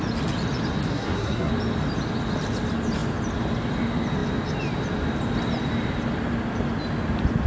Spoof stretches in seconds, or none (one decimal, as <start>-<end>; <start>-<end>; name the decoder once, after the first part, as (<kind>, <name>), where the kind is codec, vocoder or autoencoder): 0.9-1.5 (codec, SNAC)